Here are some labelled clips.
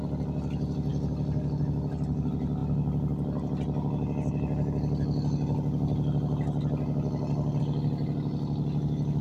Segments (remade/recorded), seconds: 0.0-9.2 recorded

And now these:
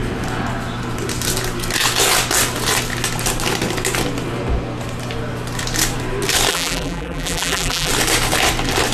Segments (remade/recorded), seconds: 0.0-6.5 recorded; 6.5-7.9 remade; 7.9-8.9 recorded